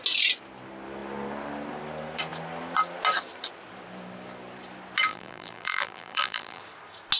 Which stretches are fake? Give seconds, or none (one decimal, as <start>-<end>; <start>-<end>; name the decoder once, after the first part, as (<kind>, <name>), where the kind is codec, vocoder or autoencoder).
5.1-6.6 (vocoder, BigVGAN v2)